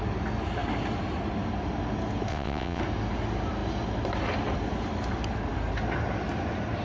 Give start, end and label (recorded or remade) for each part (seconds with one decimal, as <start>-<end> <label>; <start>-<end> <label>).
0.0-2.3 recorded; 2.3-2.8 remade; 2.8-6.8 recorded